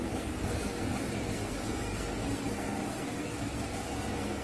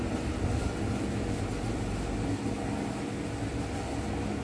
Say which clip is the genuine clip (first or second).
second